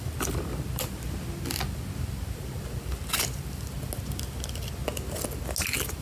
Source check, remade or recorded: recorded